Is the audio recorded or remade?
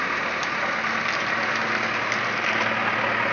recorded